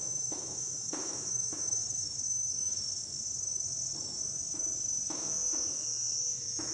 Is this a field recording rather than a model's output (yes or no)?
no